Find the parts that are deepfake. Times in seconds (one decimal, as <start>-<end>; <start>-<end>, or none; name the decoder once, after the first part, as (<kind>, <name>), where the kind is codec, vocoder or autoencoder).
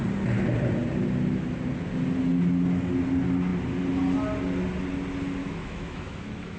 5.4-6.6 (autoencoder, DAC-VAE)